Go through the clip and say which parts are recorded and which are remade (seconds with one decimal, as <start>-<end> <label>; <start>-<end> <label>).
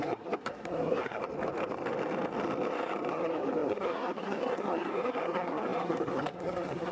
0.0-1.2 remade; 1.2-3.1 recorded; 3.1-6.9 remade